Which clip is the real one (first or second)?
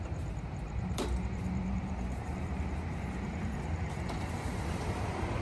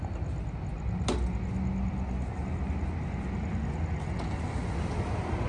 second